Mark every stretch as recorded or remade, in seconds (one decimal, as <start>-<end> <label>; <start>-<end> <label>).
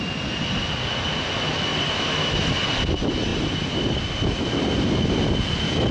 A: 0.0-5.9 recorded